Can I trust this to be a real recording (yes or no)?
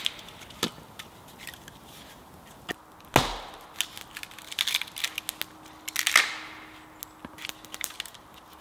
yes